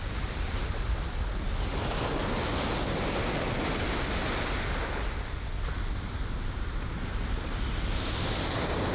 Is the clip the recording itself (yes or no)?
yes